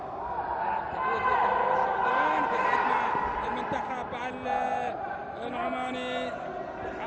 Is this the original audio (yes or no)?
yes